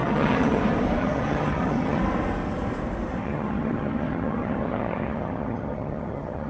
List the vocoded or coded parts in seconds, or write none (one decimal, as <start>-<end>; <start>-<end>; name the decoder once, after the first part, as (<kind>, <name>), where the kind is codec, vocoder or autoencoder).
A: 0.0-0.6 (vocoder, HiFi-GAN); 1.0-2.0; 3.2-6.5